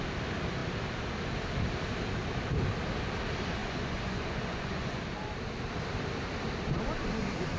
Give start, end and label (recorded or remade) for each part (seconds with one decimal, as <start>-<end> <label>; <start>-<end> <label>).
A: 0.0-3.6 recorded; 3.6-5.0 remade; 5.0-7.6 recorded